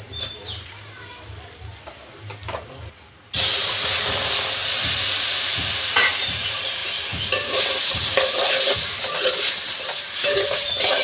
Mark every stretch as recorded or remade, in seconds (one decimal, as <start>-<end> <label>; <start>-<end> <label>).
0.0-1.7 remade; 1.7-4.0 recorded; 4.0-4.6 remade; 4.6-5.8 recorded; 5.8-6.8 remade; 6.8-8.5 recorded; 8.5-11.0 remade